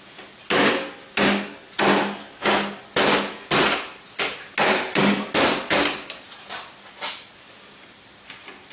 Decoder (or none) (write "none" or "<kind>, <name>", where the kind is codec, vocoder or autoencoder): none